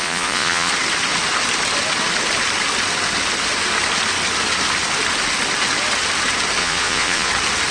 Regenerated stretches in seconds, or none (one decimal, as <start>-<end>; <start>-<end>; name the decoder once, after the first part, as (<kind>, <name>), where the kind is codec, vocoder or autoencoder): 0.0-0.7 (vocoder, Vocos); 6.6-7.3